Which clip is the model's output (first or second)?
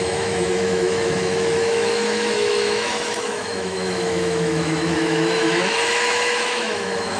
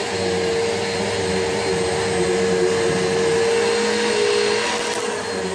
first